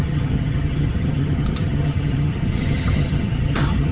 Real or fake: fake